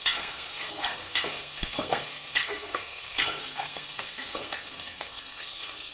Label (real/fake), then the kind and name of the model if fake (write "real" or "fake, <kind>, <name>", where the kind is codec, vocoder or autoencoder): fake, codec, SNAC